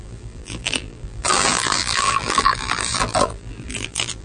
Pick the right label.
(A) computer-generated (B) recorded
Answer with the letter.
A